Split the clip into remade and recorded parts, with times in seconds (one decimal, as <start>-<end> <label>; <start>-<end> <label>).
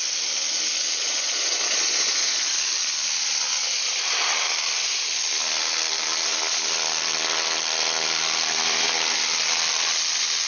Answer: 0.0-1.0 recorded; 1.0-2.5 remade; 2.5-10.5 recorded